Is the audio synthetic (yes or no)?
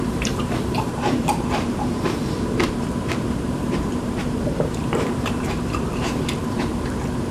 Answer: yes